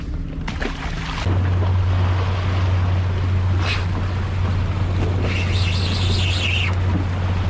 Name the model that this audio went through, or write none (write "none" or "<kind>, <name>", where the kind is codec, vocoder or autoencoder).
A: none